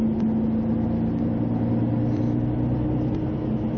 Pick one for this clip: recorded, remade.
recorded